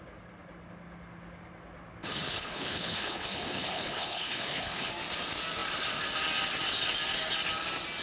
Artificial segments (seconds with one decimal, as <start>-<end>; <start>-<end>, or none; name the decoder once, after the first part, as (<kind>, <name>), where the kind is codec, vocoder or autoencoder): 2.0-4.9 (codec, HILCodec)